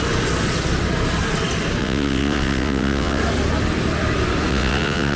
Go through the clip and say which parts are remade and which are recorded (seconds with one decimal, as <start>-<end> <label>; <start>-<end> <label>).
0.0-1.8 recorded; 1.8-3.2 remade; 3.2-4.5 recorded; 4.5-5.2 remade